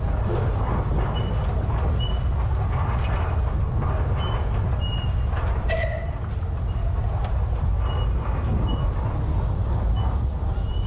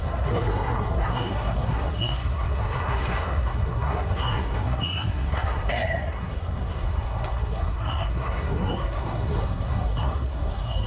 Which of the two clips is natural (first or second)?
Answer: first